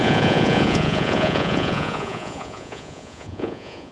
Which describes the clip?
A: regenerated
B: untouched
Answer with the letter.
A